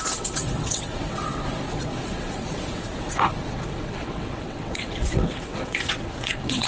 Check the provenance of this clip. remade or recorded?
remade